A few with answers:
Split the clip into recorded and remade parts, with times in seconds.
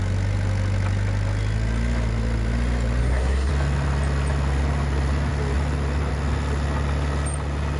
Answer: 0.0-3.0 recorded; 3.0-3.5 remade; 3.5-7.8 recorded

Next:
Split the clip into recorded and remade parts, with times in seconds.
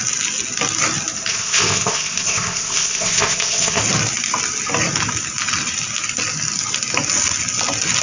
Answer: 0.0-1.3 recorded; 1.3-3.8 remade; 3.8-8.0 recorded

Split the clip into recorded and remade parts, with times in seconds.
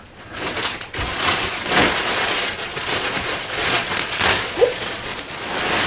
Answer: 0.0-5.1 remade; 5.1-5.9 recorded